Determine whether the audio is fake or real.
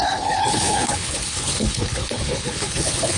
fake